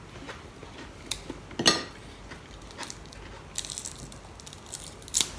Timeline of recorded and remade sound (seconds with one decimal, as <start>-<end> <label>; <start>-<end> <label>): 0.0-5.4 recorded